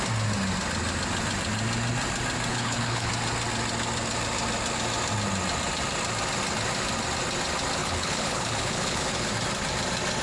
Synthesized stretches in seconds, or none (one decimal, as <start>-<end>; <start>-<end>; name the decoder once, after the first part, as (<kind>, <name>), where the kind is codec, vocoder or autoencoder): 2.5-3.1 (codec, HILCodec); 7.8-9.3